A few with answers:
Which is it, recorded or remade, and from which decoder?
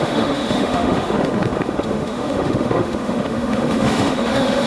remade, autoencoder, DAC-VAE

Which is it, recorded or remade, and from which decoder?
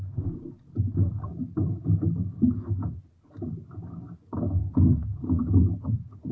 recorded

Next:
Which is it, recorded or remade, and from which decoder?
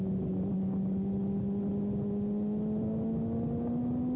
recorded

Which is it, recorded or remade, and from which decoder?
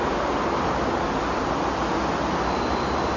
recorded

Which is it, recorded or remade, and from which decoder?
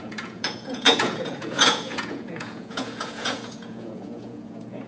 remade, vocoder, Vocos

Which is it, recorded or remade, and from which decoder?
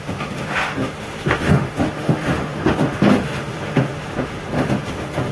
remade, autoencoder, DAC-VAE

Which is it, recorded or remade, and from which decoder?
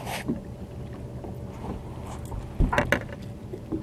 recorded